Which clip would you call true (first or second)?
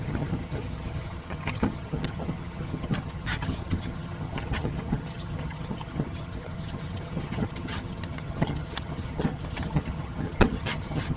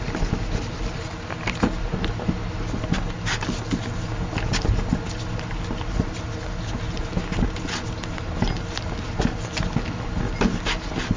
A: second